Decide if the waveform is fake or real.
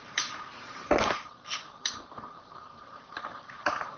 fake